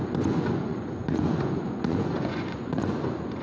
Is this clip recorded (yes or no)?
no